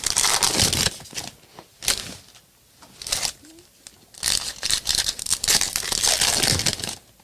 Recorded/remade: recorded